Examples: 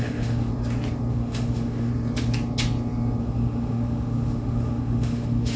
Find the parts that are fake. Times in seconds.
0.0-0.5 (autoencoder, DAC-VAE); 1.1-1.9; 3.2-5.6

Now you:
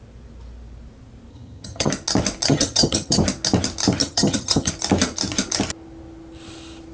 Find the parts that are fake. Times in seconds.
1.3-1.9 (vocoder, HiFi-GAN); 2.5-3.2; 4.0-4.7